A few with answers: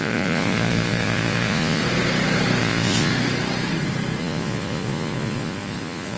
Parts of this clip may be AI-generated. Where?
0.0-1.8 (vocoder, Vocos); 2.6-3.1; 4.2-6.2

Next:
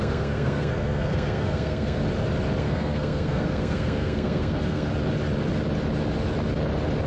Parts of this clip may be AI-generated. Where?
0.0-2.0 (codec, SNAC); 2.6-4.9

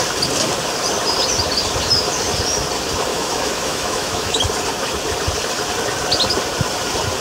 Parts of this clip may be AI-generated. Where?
3.1-4.4 (autoencoder, DAC-VAE)